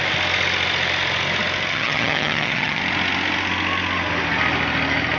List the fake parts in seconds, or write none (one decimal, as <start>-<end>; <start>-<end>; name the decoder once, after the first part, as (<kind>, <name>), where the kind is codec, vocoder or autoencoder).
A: 1.7-2.8 (vocoder, HiFi-GAN)